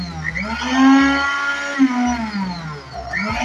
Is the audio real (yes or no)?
yes